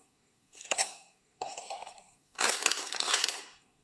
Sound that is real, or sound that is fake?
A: fake